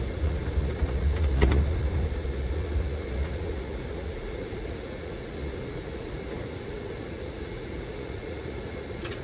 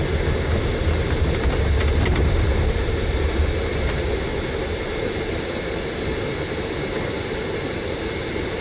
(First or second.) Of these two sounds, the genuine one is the second